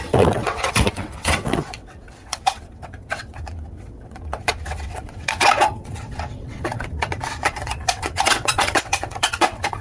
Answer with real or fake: fake